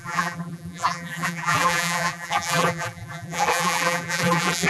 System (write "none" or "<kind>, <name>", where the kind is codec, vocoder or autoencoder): vocoder, BigVGAN v2